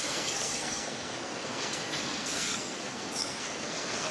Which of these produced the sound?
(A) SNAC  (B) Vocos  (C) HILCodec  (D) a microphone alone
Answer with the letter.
A